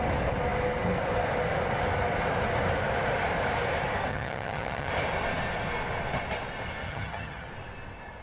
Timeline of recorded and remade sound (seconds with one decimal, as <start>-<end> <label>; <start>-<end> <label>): 0.0-4.1 recorded; 4.1-4.9 remade; 4.9-6.8 recorded; 6.8-7.5 remade; 7.5-8.2 recorded